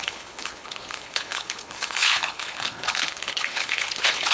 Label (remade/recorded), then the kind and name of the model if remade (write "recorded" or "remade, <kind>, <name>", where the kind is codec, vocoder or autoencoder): remade, codec, HILCodec